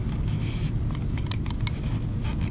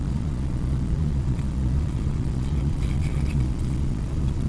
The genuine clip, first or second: first